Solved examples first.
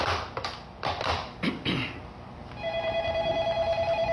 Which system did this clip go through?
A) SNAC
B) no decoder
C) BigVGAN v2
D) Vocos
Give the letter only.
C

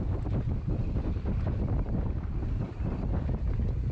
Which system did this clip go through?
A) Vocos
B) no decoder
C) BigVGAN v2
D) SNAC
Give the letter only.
B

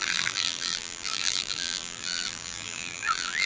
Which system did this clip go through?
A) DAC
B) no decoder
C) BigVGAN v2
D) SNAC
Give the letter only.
C